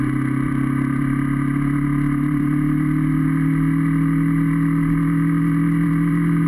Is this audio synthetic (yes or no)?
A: yes